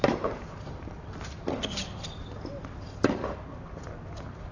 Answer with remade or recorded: recorded